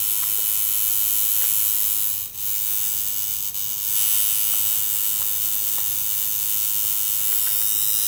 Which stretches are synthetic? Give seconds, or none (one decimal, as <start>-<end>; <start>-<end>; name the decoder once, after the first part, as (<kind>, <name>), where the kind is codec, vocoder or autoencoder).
none